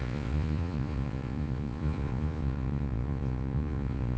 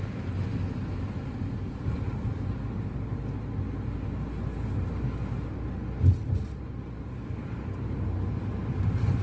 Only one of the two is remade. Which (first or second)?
first